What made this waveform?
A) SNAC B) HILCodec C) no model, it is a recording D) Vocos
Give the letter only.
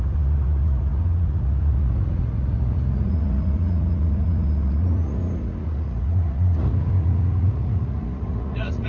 D